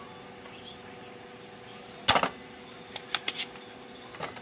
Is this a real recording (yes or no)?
yes